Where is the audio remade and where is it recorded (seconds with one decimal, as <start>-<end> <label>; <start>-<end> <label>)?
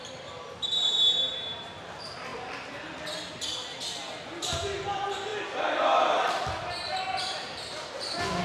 0.0-8.4 recorded